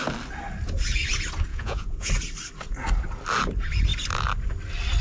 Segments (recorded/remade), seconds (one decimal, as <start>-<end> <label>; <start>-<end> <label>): 0.0-1.5 recorded; 1.5-2.1 remade; 2.1-5.0 recorded